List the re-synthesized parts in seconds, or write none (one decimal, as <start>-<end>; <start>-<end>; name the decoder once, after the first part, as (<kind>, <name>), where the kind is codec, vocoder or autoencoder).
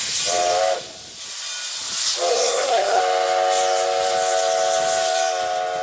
2.3-3.0 (codec, SNAC)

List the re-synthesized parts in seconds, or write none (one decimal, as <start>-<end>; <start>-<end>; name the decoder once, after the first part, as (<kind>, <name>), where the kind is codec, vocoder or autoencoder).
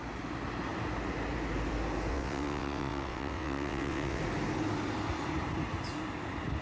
2.1-4.2 (vocoder, WaveNeXt)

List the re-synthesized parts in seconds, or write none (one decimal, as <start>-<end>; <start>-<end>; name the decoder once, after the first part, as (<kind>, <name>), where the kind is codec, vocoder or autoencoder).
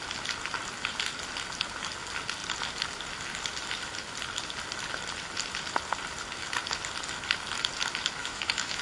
8.2-8.8 (autoencoder, DAC-VAE)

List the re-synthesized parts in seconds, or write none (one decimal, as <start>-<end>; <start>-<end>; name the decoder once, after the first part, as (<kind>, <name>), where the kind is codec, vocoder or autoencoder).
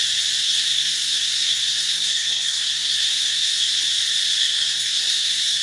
0.4-3.8 (codec, SNAC); 4.4-5.6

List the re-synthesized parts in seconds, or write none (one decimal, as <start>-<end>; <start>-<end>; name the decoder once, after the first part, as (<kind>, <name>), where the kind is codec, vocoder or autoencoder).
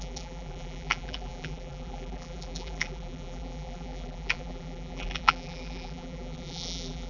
0.0-7.1 (vocoder, BigVGAN v2)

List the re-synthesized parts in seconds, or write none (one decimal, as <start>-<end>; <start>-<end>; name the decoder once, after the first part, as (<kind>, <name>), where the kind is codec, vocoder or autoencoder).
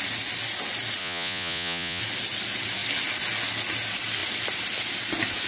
1.0-2.0 (vocoder, Vocos)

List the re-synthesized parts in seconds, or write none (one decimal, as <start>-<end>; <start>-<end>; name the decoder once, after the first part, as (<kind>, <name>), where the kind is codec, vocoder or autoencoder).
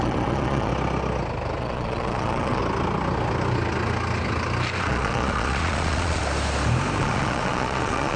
0.0-0.7 (vocoder, Vocos); 1.6-2.6; 4.8-6.2; 7.0-8.2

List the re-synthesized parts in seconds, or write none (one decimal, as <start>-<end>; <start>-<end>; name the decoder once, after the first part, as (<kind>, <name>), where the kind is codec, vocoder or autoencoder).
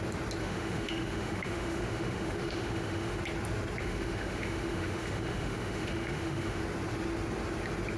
0.4-3.2 (autoencoder, DAC-VAE); 3.8-6.6